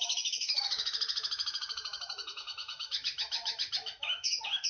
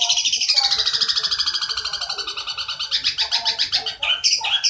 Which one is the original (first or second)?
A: second